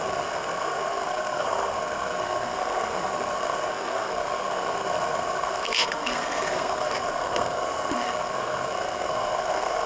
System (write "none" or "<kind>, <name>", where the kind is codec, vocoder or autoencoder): codec, SNAC